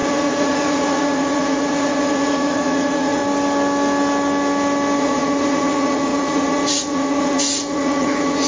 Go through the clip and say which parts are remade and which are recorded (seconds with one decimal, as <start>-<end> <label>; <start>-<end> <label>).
0.0-3.2 remade; 3.2-5.0 recorded; 5.0-8.5 remade

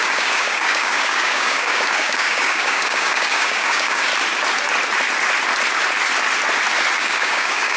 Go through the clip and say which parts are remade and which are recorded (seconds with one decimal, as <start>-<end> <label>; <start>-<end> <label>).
0.0-4.1 remade; 4.1-7.0 recorded; 7.0-7.8 remade

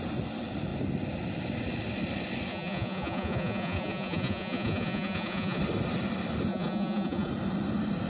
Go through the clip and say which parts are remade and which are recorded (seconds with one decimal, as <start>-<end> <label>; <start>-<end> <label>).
0.0-2.5 recorded; 2.5-5.6 remade; 5.6-6.5 recorded; 6.5-7.3 remade; 7.3-8.1 recorded